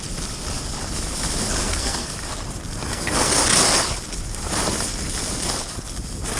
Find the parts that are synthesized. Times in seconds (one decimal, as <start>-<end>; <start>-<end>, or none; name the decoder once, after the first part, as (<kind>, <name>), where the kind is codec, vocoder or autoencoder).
1.6-2.1 (codec, SNAC); 2.8-3.3